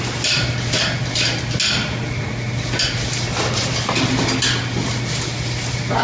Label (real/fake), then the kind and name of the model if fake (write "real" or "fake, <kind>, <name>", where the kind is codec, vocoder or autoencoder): real